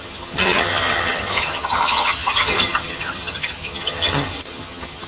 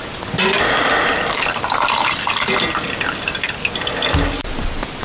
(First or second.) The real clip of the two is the second